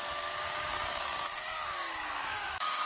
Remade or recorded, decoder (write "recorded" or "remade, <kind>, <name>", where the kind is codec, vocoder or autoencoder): remade, codec, DAC